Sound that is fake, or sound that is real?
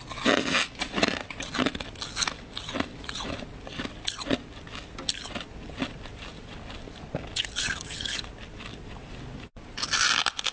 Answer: real